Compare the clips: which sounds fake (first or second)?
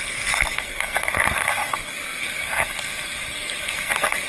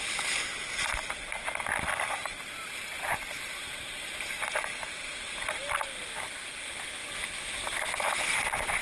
first